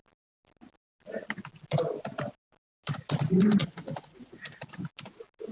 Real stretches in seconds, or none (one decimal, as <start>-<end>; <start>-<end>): 0.0-3.6; 4.4-5.5